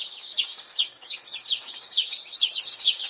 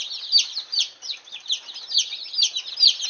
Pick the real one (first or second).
second